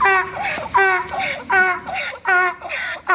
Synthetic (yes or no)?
no